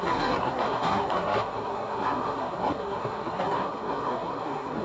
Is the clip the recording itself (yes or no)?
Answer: no